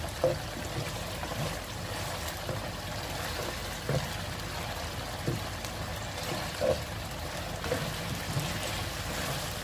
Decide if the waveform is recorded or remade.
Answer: recorded